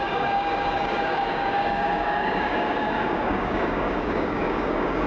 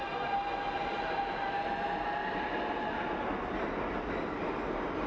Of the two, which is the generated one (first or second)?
first